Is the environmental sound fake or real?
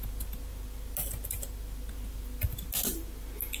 real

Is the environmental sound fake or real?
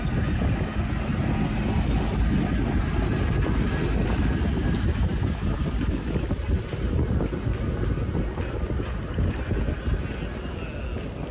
real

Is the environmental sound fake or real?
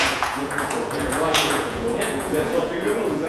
fake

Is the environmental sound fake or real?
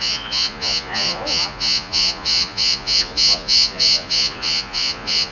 fake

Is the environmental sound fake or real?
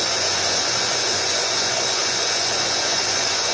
fake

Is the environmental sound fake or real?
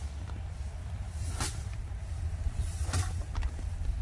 real